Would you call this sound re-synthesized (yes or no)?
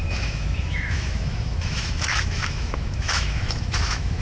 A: yes